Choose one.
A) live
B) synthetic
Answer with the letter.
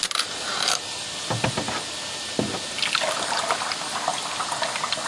A